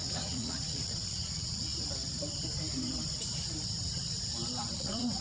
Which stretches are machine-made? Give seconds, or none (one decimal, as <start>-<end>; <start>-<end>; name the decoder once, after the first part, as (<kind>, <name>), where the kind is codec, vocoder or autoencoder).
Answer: 0.0-1.7 (vocoder, Vocos); 4.8-5.2